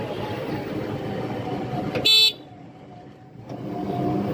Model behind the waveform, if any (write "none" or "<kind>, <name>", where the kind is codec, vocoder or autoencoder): none